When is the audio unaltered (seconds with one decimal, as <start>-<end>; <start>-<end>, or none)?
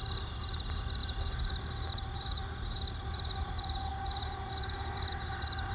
0.0-5.7